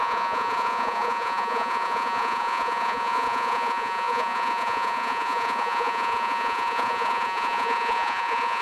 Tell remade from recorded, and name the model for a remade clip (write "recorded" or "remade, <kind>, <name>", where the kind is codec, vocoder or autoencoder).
remade, vocoder, Vocos